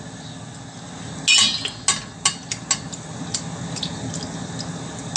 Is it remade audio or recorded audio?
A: recorded